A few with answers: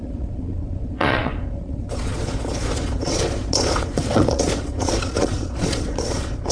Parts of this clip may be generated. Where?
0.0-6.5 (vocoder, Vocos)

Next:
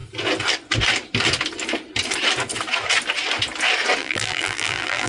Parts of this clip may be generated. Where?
4.0-5.1 (vocoder, BigVGAN v2)